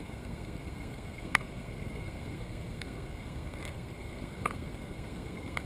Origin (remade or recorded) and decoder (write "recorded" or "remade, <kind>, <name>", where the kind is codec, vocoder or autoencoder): remade, codec, SNAC